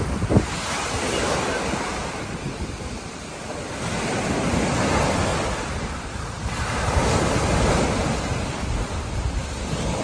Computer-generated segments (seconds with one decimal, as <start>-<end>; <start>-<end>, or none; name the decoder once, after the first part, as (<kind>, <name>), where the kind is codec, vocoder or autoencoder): none